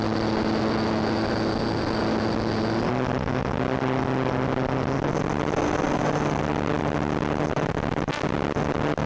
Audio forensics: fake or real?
real